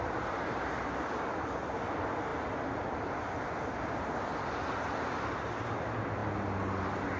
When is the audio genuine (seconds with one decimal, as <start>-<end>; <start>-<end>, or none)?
0.0-7.2